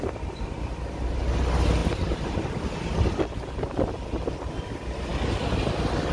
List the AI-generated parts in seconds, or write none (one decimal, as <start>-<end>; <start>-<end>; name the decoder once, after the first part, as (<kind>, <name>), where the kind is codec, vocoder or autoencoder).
none